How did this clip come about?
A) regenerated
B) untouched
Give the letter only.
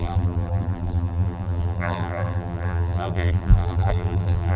A